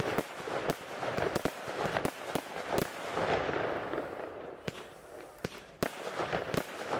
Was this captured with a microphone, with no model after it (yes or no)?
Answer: yes